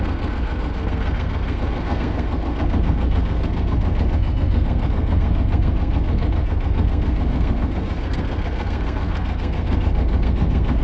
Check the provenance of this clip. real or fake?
fake